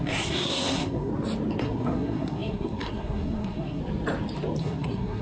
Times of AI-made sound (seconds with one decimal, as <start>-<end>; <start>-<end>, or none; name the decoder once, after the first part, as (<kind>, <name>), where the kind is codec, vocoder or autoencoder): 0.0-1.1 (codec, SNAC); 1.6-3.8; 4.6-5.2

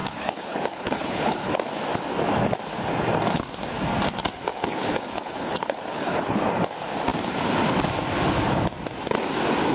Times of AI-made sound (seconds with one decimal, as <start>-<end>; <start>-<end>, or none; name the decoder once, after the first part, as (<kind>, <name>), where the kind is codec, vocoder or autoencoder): 0.0-1.5 (codec, HILCodec); 4.5-6.4

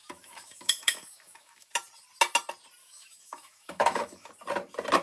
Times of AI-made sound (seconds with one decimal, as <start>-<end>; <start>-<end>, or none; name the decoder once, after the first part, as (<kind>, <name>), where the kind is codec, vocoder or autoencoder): 0.0-1.7 (autoencoder, DAC-VAE); 2.8-4.3

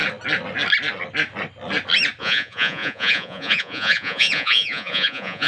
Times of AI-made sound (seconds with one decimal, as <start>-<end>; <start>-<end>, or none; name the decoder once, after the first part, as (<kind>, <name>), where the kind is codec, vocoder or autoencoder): 2.2-5.5 (vocoder, Vocos)

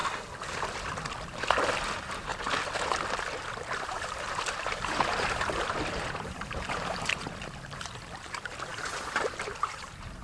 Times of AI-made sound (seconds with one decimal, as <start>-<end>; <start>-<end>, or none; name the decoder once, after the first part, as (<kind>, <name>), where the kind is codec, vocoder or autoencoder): 1.9-2.3 (vocoder, BigVGAN v2); 3.8-10.2

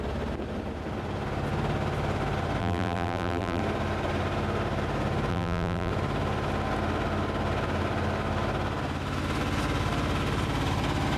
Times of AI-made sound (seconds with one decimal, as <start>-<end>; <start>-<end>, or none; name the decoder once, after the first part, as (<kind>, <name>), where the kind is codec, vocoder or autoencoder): 2.6-3.6 (vocoder, BigVGAN v2); 5.3-5.9

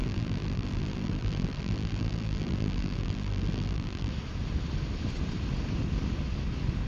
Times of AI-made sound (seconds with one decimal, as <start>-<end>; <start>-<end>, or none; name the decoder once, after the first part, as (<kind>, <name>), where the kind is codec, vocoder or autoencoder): 0.0-4.1 (vocoder, BigVGAN v2)